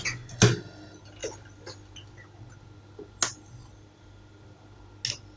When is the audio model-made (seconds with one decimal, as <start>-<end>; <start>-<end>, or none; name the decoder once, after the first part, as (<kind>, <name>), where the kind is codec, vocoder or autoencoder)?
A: none